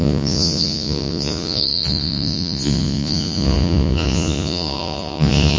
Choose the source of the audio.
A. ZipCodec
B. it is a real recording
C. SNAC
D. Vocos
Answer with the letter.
D